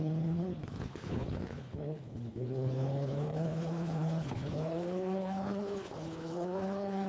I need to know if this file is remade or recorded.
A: remade